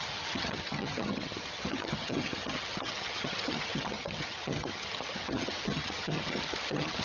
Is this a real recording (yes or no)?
no